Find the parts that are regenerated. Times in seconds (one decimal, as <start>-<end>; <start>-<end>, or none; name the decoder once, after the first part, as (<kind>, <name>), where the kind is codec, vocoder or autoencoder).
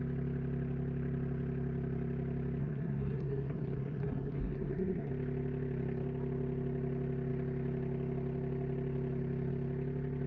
2.6-5.1 (codec, SNAC)